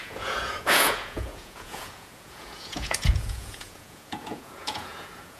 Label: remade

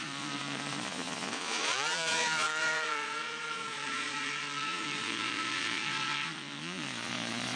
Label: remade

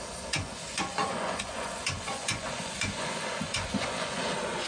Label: remade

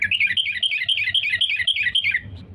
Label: recorded